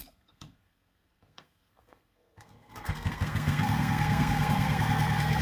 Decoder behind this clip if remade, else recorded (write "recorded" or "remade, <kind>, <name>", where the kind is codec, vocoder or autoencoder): remade, codec, SNAC